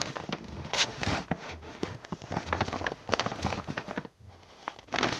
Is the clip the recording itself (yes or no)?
no